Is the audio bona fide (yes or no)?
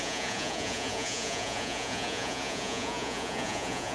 no